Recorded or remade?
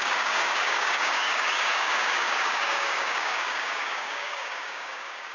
remade